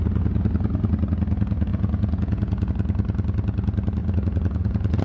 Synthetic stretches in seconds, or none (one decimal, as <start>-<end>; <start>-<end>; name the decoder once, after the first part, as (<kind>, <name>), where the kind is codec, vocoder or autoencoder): 1.7-2.7 (vocoder, Vocos); 4.0-5.0

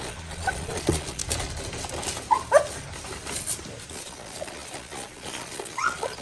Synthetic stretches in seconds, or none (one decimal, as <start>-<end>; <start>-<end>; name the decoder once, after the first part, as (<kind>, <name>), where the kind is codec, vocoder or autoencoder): 0.0-1.2 (vocoder, Vocos); 3.9-6.2

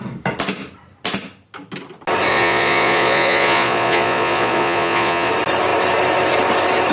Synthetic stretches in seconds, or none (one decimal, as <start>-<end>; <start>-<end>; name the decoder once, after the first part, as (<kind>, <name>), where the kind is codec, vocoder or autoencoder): 2.3-5.3 (vocoder, Vocos)

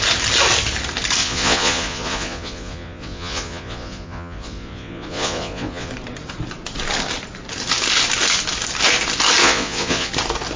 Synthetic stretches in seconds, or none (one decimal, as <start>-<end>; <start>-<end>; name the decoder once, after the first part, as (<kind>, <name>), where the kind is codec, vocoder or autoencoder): 1.2-5.9 (vocoder, Vocos); 9.4-10.1

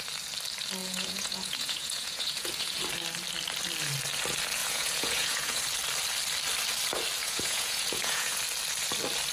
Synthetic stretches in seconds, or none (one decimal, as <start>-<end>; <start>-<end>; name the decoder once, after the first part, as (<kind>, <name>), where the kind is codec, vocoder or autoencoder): 0.8-2.8 (vocoder, Vocos); 4.6-5.6; 7.2-8.4